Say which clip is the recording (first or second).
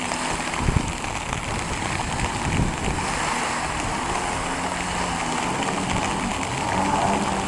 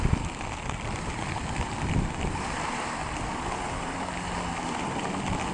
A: first